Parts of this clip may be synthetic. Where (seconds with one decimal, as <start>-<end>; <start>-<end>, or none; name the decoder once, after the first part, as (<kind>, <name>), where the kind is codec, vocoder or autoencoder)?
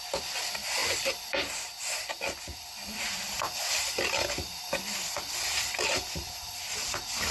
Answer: 0.0-7.3 (vocoder, BigVGAN v2)